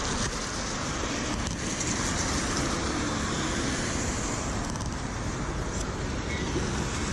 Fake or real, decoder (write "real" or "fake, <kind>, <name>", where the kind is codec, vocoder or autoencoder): real